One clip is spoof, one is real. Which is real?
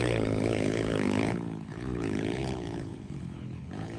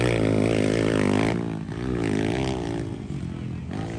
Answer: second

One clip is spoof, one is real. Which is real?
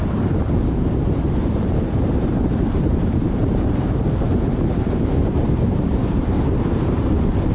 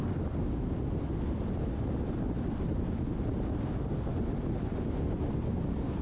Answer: second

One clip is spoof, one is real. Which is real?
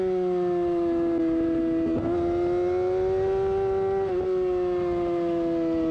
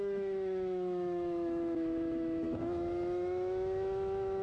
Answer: first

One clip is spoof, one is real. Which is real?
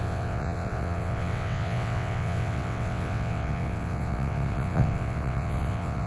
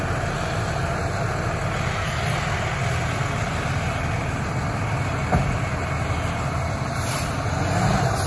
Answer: second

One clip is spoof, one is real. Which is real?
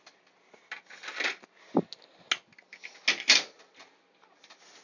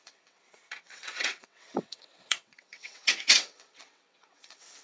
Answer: first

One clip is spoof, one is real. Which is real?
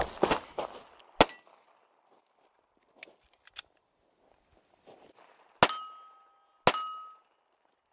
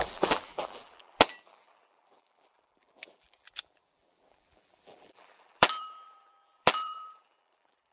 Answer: first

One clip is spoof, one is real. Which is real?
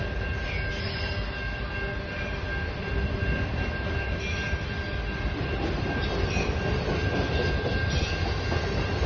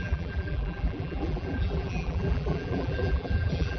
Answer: first